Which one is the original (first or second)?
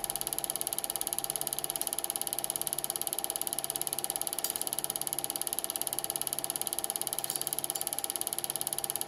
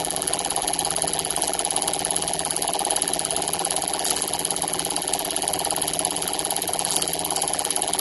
first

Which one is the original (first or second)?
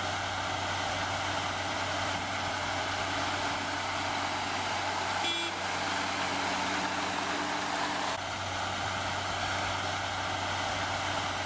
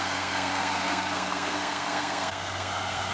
first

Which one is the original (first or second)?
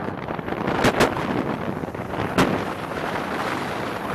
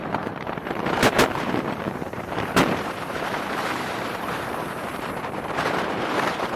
first